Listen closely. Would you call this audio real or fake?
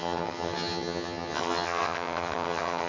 fake